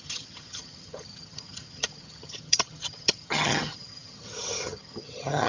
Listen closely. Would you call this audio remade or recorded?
remade